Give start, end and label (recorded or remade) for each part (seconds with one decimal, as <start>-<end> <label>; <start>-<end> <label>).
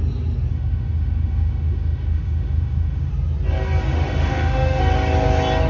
0.0-0.5 recorded; 0.5-3.1 remade; 3.1-3.9 recorded; 3.9-4.8 remade; 4.8-5.7 recorded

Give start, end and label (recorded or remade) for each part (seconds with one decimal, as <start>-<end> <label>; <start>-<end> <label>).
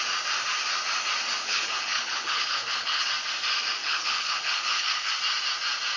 0.0-1.4 recorded; 1.4-3.1 remade; 3.1-3.8 recorded; 3.8-5.1 remade; 5.1-6.0 recorded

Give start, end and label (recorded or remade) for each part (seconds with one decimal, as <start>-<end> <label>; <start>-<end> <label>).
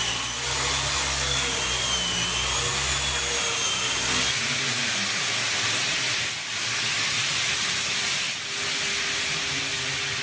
0.0-1.1 recorded; 1.1-1.6 remade; 1.6-10.2 recorded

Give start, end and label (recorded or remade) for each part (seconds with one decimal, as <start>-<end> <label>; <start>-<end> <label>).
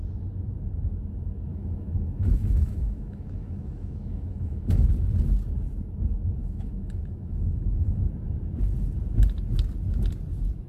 0.0-1.5 recorded; 1.5-4.9 remade; 4.9-6.4 recorded; 6.4-8.1 remade; 8.1-10.7 recorded